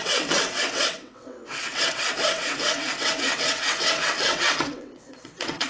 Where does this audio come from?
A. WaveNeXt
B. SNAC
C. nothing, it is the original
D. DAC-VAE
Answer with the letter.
A